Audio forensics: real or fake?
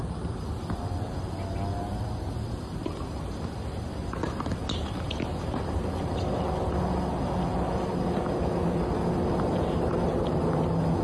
real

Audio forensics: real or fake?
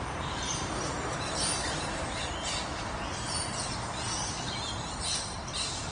fake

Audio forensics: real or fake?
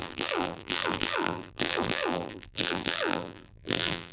fake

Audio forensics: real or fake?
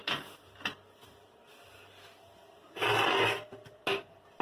real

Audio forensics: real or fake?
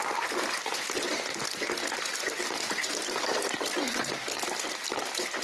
fake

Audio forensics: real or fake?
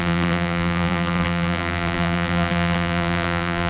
fake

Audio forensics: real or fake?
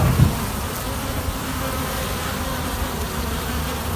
real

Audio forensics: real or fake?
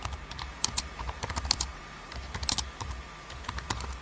fake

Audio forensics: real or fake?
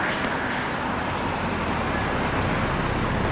real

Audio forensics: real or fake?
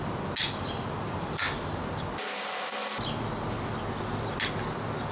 real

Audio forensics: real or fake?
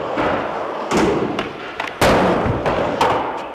real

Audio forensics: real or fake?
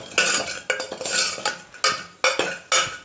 real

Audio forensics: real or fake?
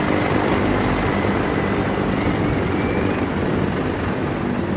fake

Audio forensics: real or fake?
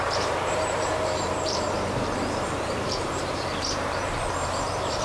fake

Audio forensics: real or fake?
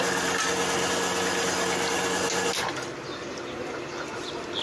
real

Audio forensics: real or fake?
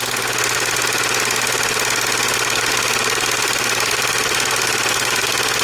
fake